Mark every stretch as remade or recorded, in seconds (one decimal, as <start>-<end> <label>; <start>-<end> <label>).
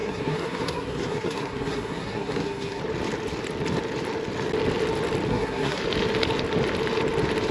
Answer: 0.0-2.8 remade; 2.8-5.3 recorded; 5.3-5.8 remade; 5.8-7.5 recorded